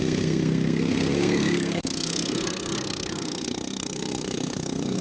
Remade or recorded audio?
remade